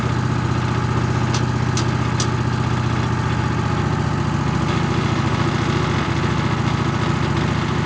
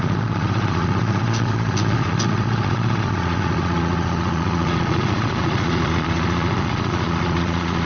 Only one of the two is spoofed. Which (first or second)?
second